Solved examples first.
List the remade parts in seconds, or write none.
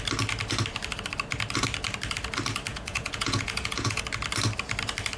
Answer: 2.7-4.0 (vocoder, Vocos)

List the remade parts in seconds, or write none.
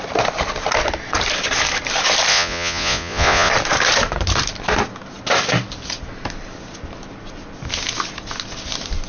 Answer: 2.3-3.5 (vocoder, Vocos)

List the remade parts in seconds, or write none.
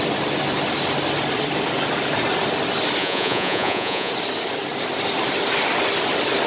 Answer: 3.0-4.1 (vocoder, Vocos)